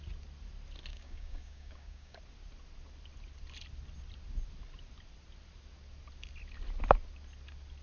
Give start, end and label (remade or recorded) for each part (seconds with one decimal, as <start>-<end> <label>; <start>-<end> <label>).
0.0-0.9 recorded; 0.9-2.2 remade; 2.2-7.8 recorded